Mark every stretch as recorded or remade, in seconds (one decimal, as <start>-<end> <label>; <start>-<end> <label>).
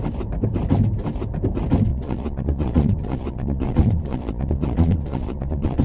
0.0-1.9 recorded; 1.9-5.8 remade